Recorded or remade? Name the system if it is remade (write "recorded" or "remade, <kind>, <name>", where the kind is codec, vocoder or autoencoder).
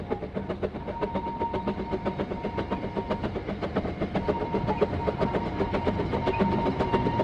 recorded